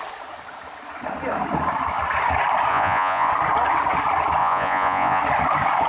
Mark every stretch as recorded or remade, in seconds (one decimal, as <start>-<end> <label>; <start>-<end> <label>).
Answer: 0.0-2.7 recorded; 2.7-3.3 remade; 3.3-4.4 recorded; 4.4-5.2 remade; 5.2-5.9 recorded